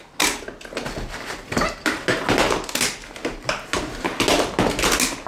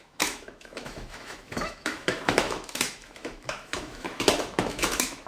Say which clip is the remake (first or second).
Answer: second